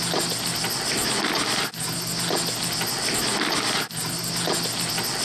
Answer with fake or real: real